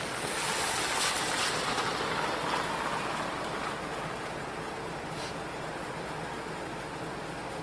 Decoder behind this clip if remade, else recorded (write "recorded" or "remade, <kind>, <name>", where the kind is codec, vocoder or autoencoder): recorded